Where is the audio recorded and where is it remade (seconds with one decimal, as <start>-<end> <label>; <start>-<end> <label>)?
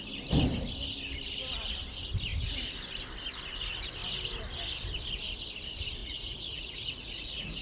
0.0-6.0 recorded; 6.0-7.6 remade